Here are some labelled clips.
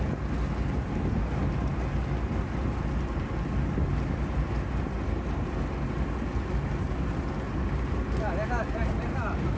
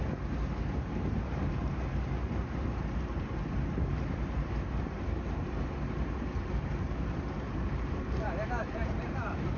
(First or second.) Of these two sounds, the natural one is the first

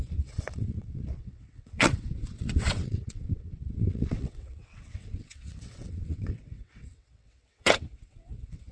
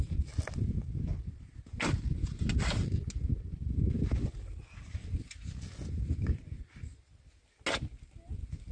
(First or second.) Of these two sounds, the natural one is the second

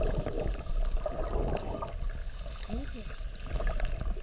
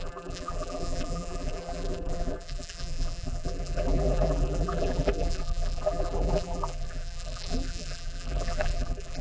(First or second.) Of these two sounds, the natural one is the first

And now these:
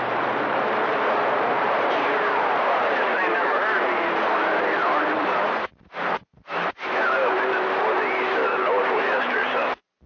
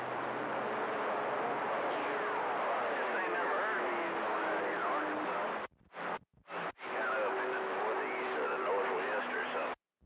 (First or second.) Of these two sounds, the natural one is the second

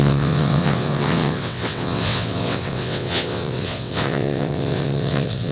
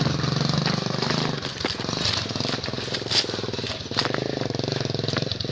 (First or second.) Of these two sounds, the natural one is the second